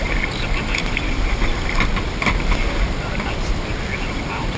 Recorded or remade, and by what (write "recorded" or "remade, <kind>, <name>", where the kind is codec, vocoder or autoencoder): remade, vocoder, BigVGAN v2